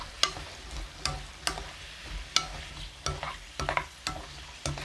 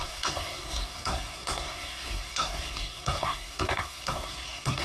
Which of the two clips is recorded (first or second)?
first